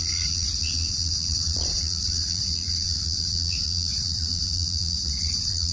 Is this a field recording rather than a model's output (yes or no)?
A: no